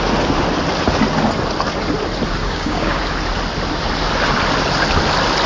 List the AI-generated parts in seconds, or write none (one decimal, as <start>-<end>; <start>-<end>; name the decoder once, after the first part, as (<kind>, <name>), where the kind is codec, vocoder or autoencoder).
2.4-3.0 (codec, DAC)